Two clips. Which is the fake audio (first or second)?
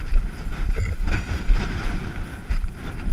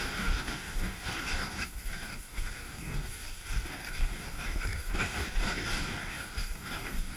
second